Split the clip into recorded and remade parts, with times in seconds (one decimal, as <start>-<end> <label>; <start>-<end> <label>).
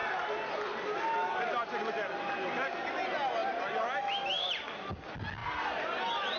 0.0-6.4 recorded